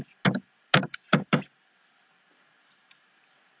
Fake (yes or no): no